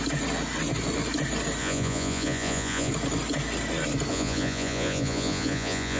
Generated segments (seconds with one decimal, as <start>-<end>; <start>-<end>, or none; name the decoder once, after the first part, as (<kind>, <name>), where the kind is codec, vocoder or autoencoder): 1.6-2.9 (vocoder, Vocos); 4.1-6.0